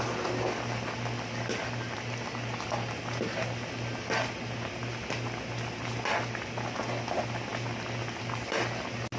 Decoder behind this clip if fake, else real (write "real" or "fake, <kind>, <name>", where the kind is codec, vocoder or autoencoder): real